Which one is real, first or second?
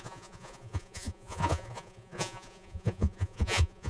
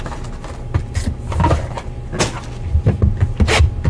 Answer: second